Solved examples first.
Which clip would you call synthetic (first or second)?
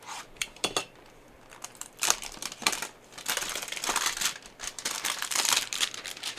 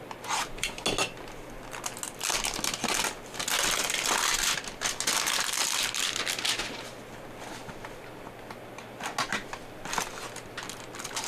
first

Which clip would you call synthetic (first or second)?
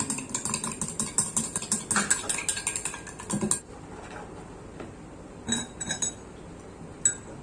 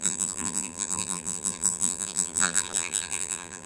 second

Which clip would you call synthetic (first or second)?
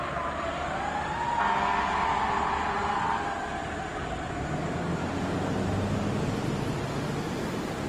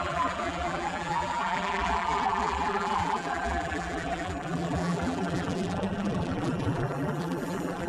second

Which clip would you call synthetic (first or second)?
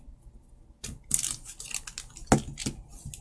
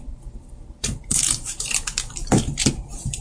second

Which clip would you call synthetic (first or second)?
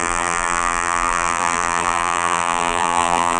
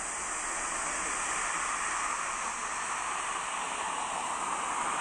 first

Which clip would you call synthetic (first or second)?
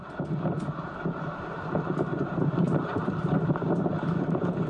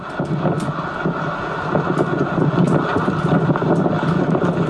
first